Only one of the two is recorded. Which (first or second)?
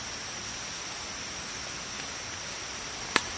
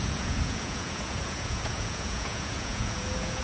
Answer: first